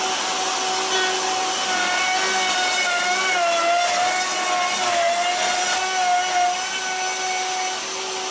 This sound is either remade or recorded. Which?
recorded